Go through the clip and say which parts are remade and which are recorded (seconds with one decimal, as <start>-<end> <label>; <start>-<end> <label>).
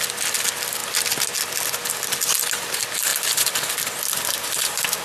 0.0-5.0 recorded